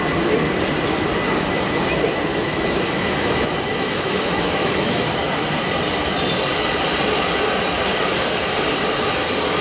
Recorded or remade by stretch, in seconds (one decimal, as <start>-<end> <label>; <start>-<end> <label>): 0.0-2.3 recorded; 2.3-5.1 remade; 5.1-9.6 recorded